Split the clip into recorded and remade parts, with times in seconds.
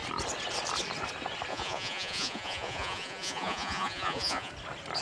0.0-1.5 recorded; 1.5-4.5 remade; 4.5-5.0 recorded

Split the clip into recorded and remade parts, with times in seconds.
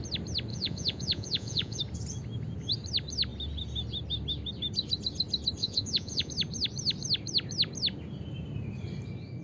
0.0-0.5 recorded; 0.5-1.8 remade; 1.8-5.6 recorded; 5.6-6.3 remade; 6.3-9.4 recorded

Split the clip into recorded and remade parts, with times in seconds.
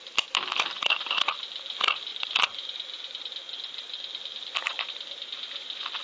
0.0-6.0 recorded